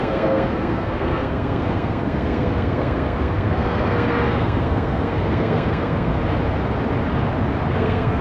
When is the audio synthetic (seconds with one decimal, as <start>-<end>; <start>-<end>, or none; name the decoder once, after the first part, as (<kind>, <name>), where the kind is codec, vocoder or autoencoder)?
0.0-6.1 (codec, SNAC); 7.7-8.2